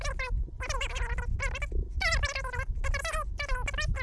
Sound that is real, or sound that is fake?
real